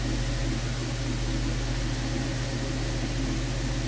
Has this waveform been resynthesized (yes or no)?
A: no